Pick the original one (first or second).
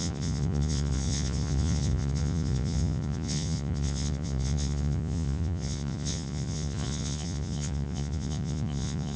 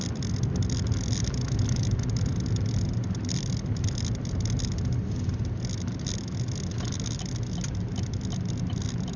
second